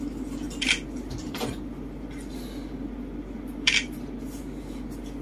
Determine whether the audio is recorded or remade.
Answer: remade